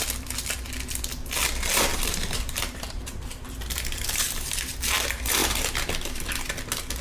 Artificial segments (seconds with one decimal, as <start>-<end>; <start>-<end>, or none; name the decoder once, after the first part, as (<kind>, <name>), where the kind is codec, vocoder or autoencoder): 1.9-4.8 (vocoder, BigVGAN v2)